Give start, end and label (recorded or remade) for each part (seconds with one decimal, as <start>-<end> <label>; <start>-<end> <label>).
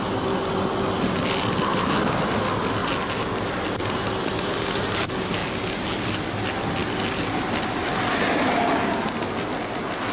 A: 0.0-10.1 recorded